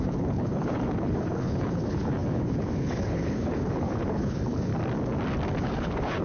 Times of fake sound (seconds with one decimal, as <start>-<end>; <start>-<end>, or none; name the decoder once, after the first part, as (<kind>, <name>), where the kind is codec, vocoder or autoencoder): 0.0-4.7 (codec, HILCodec); 5.6-6.2